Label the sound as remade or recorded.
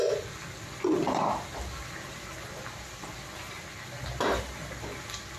recorded